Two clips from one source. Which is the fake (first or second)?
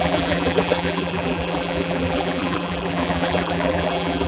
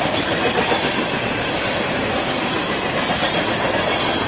first